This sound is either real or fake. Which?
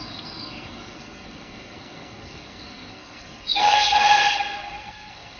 fake